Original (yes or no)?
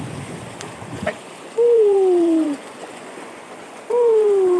no